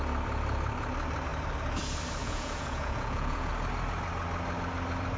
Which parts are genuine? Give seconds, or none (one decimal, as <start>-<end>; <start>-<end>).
0.0-2.2; 3.5-5.2